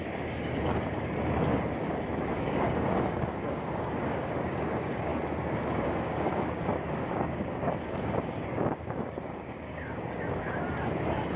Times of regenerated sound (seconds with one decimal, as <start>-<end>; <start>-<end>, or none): 0.0-11.4